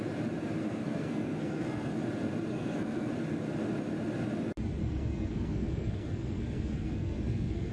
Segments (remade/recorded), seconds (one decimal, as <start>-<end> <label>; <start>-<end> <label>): 0.0-0.6 recorded; 0.6-2.0 remade; 2.0-2.5 recorded; 2.5-3.1 remade; 3.1-4.8 recorded; 4.8-7.7 remade